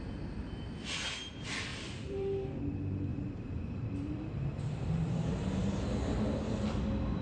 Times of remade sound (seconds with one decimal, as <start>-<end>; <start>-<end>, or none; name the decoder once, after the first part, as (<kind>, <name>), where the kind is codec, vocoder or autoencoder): 1.7-2.6 (vocoder, BigVGAN v2); 3.1-3.8